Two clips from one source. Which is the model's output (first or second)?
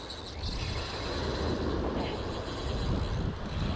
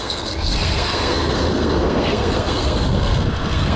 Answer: second